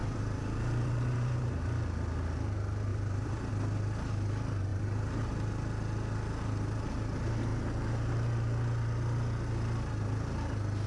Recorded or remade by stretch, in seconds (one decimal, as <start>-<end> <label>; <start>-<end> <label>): 0.0-1.6 remade; 1.6-2.9 recorded; 2.9-3.5 remade; 3.5-4.7 recorded; 4.7-5.3 remade; 5.3-10.9 recorded